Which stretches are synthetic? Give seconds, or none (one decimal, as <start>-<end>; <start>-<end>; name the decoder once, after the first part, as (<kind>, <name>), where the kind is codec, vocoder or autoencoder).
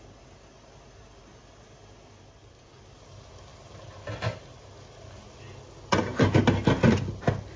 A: none